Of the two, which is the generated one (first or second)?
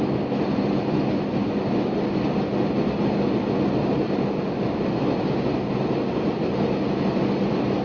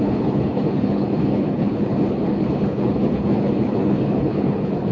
second